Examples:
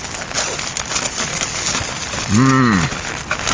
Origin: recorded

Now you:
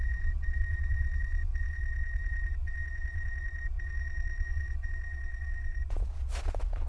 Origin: remade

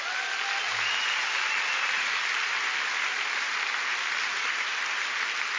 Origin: recorded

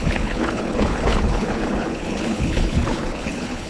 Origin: remade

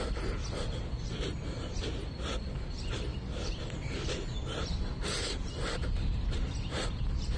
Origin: recorded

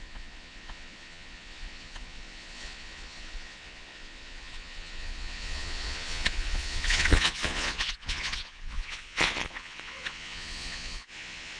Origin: remade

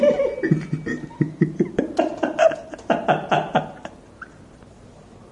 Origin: recorded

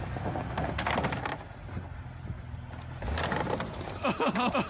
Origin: recorded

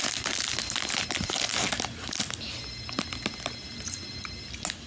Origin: recorded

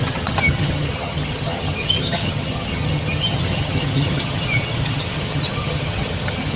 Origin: remade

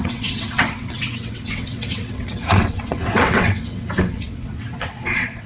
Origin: remade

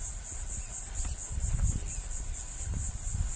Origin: recorded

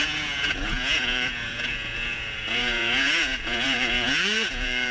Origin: remade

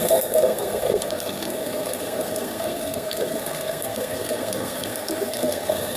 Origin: remade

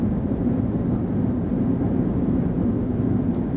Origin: recorded